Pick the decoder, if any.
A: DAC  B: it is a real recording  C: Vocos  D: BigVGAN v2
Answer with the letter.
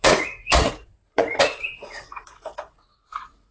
C